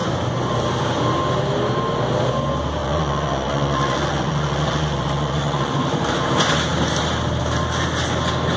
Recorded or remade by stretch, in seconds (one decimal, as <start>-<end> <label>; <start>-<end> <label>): 0.0-0.5 remade; 0.5-2.8 recorded; 2.8-6.1 remade; 6.1-8.6 recorded